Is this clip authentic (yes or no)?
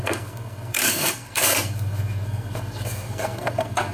no